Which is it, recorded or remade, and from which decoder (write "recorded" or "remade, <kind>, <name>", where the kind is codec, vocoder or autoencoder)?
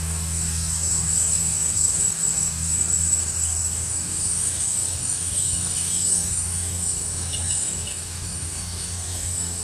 remade, codec, DAC